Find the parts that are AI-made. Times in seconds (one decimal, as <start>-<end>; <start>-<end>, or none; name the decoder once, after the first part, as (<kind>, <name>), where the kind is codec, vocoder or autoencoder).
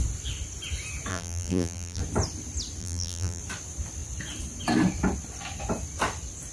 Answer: 1.1-2.0 (vocoder, BigVGAN v2); 2.8-3.4